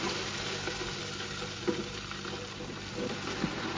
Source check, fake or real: real